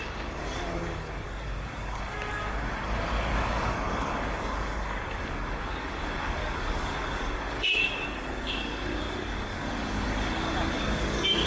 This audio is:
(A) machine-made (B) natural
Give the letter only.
A